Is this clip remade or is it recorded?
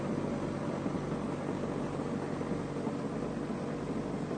recorded